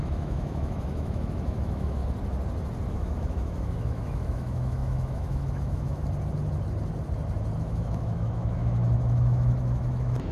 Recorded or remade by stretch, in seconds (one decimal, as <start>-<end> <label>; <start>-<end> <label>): 0.0-2.0 remade; 2.0-2.9 recorded; 2.9-6.0 remade; 6.0-7.6 recorded; 7.6-10.3 remade